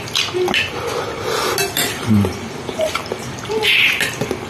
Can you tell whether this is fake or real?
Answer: real